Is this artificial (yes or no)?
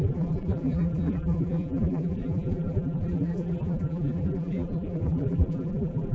yes